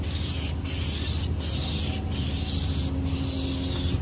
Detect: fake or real real